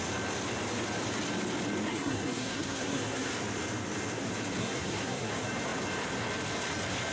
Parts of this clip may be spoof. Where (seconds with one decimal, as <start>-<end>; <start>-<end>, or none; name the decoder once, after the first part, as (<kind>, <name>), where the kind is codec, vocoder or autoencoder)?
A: 1.9-3.3 (codec, SNAC); 4.6-5.3